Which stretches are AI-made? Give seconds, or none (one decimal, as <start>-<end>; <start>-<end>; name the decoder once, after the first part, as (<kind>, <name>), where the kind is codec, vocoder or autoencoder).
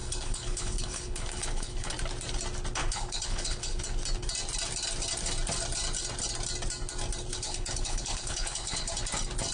0.0-1.9 (codec, HILCodec); 2.8-3.8; 7.3-8.9